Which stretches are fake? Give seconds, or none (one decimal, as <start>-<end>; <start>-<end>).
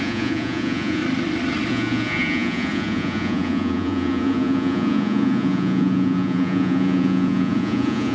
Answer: 0.0-1.0; 1.7-8.1